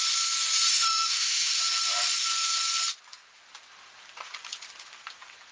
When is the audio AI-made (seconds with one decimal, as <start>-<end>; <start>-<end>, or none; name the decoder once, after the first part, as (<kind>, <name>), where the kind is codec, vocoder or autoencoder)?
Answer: 0.7-1.6 (autoencoder, DAC-VAE)